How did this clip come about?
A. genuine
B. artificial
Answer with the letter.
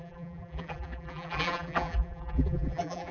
B